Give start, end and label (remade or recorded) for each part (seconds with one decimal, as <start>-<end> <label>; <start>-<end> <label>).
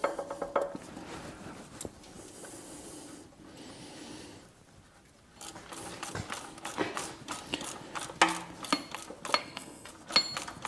0.0-9.4 recorded; 9.4-9.9 remade; 9.9-10.7 recorded